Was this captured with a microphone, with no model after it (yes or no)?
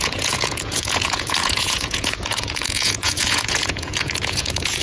no